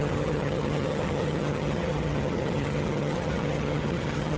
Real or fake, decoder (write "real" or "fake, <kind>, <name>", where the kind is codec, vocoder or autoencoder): fake, vocoder, HiFi-GAN